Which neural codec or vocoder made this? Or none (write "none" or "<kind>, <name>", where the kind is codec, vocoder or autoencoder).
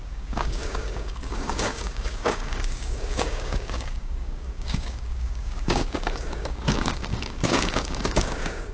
codec, DAC